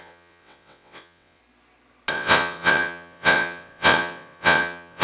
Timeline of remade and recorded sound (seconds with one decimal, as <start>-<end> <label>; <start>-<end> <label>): 0.0-1.4 remade; 1.4-2.1 recorded; 2.1-5.0 remade